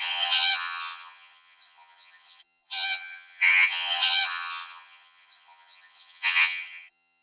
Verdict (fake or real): fake